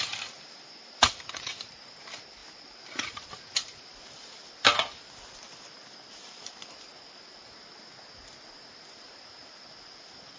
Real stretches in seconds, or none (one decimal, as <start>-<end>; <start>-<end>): 4.4-6.2; 7.7-8.6